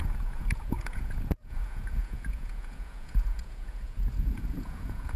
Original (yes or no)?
no